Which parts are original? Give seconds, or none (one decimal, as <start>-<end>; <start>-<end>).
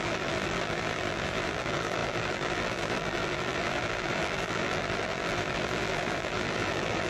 none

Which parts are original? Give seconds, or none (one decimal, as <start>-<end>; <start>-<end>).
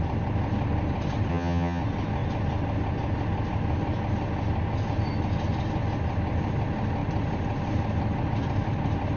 0.0-1.3; 1.8-9.2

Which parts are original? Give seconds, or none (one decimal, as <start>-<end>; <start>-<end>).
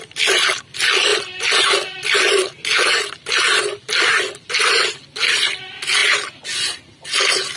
0.0-7.6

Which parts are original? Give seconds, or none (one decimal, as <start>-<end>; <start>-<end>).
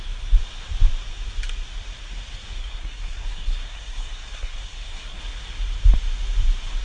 0.0-2.6; 5.2-6.8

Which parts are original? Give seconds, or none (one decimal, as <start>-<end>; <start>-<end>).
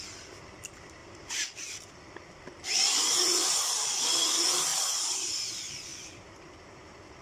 0.0-1.0; 1.9-4.7; 5.5-7.2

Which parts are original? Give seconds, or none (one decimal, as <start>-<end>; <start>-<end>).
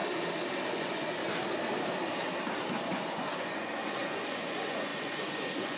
0.0-0.7; 1.2-2.8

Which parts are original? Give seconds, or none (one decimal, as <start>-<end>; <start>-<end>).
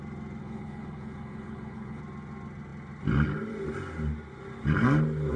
0.0-0.4; 2.0-5.4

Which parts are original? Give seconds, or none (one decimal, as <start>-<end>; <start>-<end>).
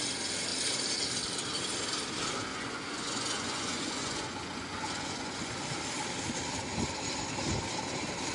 0.0-2.5; 5.5-8.3